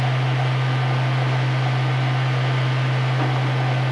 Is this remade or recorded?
recorded